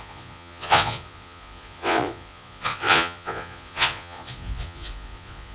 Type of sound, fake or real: fake